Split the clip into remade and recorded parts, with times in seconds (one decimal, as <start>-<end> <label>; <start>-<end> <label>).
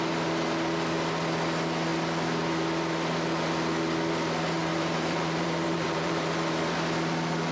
0.0-4.7 recorded; 4.7-6.7 remade; 6.7-7.5 recorded